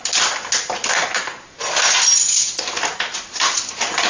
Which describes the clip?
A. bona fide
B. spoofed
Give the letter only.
A